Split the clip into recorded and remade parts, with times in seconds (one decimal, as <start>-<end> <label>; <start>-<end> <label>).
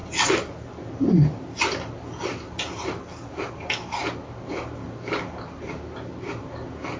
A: 0.0-7.0 recorded